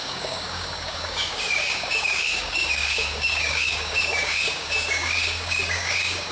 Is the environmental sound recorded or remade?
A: remade